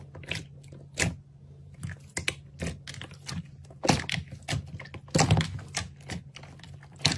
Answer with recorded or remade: recorded